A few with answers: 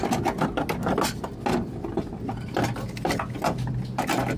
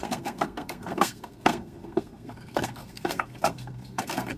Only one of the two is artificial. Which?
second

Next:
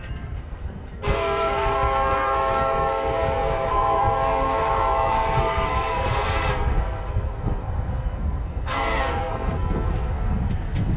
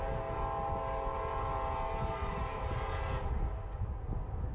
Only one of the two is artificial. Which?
first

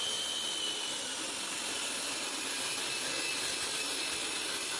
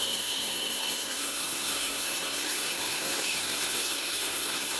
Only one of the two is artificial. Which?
second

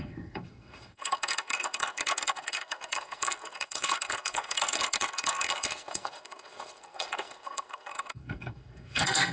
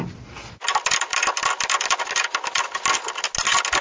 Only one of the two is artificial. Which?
first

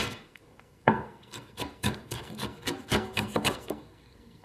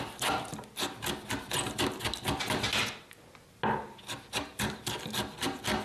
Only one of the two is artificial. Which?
first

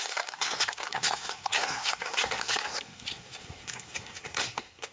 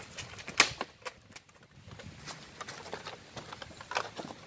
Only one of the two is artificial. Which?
first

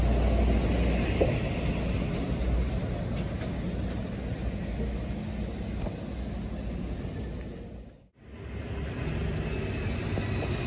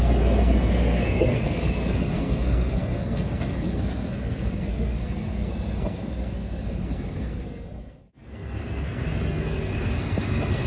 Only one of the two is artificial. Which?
second